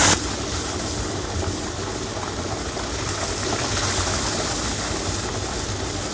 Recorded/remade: recorded